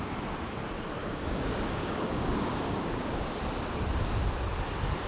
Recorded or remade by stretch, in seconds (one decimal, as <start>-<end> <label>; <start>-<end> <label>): 0.0-1.0 recorded; 1.0-3.4 remade; 3.4-5.1 recorded